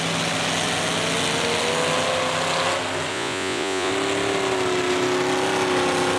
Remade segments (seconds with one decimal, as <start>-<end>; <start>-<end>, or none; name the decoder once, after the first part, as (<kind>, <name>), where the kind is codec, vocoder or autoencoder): 3.1-3.9 (vocoder, Vocos)